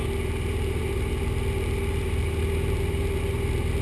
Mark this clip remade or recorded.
recorded